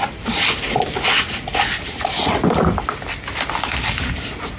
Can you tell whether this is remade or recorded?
remade